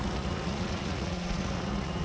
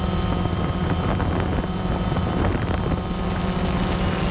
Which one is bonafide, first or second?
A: second